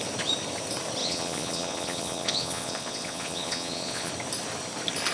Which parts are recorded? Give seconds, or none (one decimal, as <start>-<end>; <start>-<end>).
0.0-1.0; 4.1-5.1